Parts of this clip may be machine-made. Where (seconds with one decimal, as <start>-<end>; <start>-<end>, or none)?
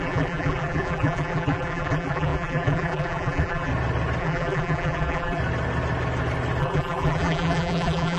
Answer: 0.0-3.7; 4.2-5.4; 6.6-8.2